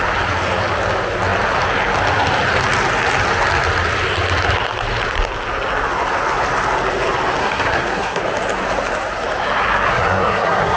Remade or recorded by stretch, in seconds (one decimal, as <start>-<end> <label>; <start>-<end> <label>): 0.0-7.4 recorded; 7.4-8.2 remade; 8.2-9.9 recorded; 9.9-10.8 remade